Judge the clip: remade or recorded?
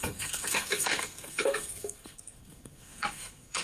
remade